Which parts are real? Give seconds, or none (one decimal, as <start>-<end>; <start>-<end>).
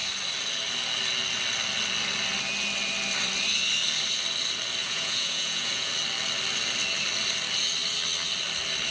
0.0-4.8; 5.9-8.9